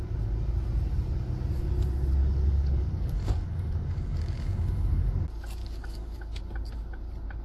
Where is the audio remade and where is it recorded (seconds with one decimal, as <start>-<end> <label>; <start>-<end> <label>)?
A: 0.0-2.2 recorded; 2.2-5.1 remade; 5.1-5.6 recorded; 5.6-6.4 remade; 6.4-7.4 recorded